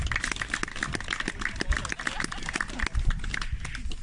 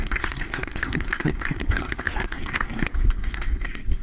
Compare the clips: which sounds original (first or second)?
first